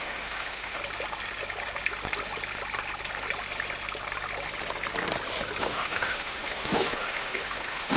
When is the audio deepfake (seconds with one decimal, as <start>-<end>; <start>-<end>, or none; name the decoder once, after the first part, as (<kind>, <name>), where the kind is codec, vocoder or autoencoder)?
0.0-0.8 (autoencoder, DAC-VAE); 5.6-8.0